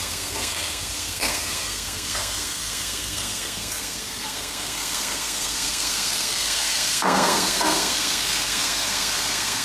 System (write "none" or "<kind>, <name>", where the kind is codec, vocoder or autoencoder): codec, SNAC